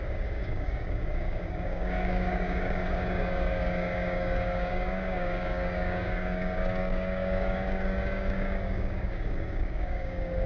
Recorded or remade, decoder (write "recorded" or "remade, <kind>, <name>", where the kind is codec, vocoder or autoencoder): remade, codec, DAC